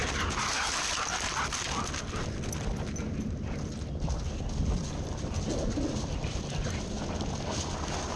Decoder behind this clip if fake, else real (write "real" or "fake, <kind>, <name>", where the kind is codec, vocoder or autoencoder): real